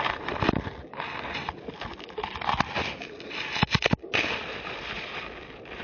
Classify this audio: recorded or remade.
recorded